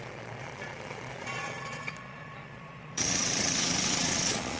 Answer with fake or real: fake